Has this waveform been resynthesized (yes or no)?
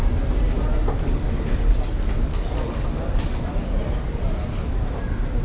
no